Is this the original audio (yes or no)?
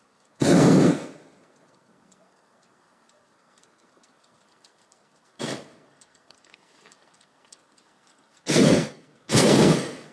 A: no